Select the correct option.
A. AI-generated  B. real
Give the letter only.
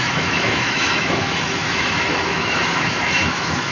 A